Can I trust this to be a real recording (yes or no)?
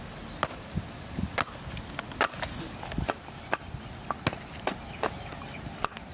yes